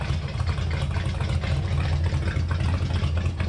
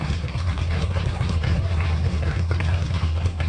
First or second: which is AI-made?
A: second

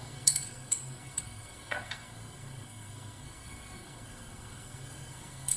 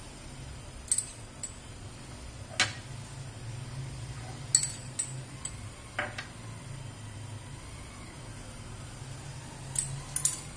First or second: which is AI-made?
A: first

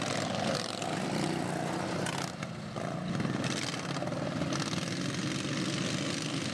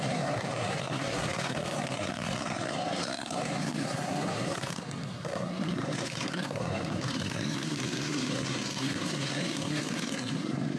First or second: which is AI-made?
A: second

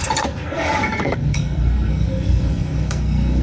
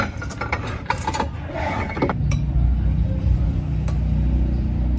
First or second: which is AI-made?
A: first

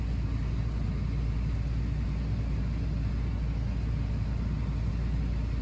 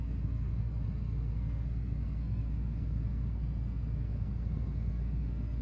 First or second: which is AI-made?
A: second